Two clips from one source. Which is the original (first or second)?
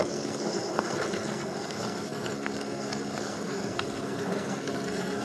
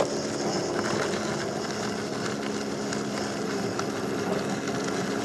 second